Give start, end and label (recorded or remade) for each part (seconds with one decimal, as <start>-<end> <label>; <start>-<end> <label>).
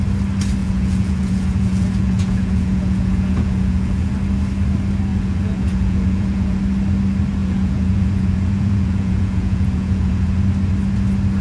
0.0-0.6 recorded; 0.6-4.1 remade; 4.1-5.1 recorded; 5.1-6.6 remade; 6.6-7.4 recorded; 7.4-10.4 remade; 10.4-11.4 recorded